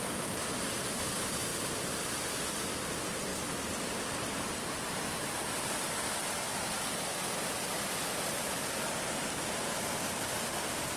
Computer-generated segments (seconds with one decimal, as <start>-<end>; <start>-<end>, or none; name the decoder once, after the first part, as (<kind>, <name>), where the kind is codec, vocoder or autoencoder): none